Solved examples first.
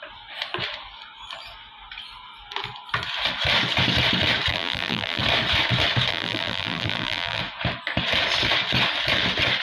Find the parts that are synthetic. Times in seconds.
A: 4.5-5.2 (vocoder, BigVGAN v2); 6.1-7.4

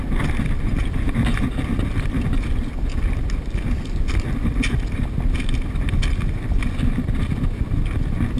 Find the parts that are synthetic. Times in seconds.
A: none

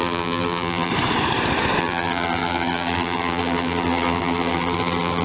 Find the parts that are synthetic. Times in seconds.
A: 0.0-0.9 (vocoder, BigVGAN v2); 1.8-5.2

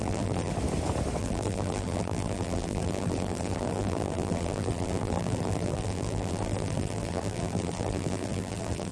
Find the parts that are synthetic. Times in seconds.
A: 0.0-0.5 (vocoder, BigVGAN v2); 1.2-8.9

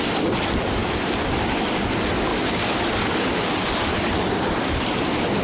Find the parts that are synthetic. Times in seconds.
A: 0.8-1.4 (vocoder, BigVGAN v2); 2.3-3.1

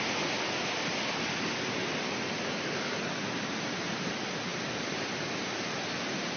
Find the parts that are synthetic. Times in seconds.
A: none

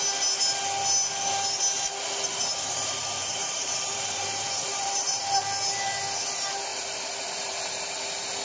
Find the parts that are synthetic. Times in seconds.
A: 2.3-5.2 (vocoder, BigVGAN v2); 6.7-7.8